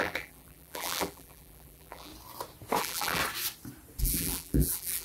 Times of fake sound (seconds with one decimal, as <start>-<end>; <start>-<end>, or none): 0.0-2.1; 2.8-3.2; 4.0-5.0